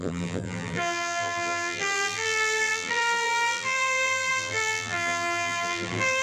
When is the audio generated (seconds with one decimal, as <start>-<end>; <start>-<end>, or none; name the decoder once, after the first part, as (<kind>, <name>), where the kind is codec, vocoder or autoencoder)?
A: 0.0-6.2 (vocoder, BigVGAN v2)